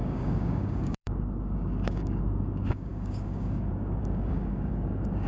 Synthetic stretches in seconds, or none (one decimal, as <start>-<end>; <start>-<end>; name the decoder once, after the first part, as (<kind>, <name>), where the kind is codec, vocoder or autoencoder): 0.0-5.3 (codec, DAC)